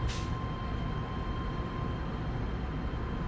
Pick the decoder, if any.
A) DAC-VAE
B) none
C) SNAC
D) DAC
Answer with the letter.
B